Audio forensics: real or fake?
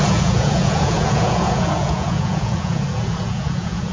fake